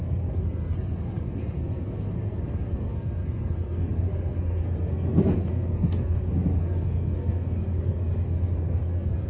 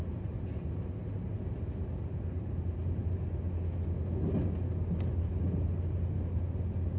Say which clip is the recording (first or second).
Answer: second